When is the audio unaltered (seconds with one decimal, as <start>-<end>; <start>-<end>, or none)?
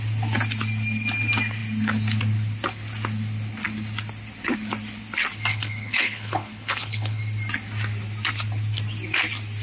0.0-5.5; 7.2-9.6